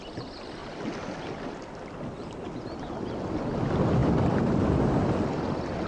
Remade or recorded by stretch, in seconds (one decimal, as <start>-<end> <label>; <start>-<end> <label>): 0.0-0.6 recorded; 0.6-1.7 remade; 1.7-4.0 recorded; 4.0-4.6 remade; 4.6-5.9 recorded